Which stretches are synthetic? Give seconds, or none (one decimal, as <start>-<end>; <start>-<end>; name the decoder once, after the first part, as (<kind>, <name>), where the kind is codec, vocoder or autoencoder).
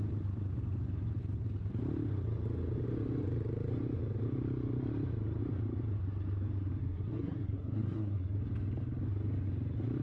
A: 6.8-8.4 (codec, SNAC)